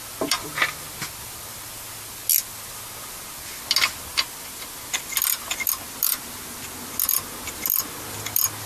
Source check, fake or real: real